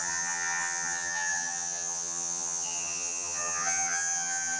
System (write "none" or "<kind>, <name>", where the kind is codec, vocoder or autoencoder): vocoder, HiFi-GAN